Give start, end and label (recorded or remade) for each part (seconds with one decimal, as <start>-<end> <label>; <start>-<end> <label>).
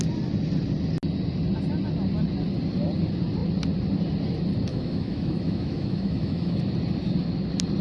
0.0-4.7 recorded; 4.7-6.6 remade; 6.6-7.8 recorded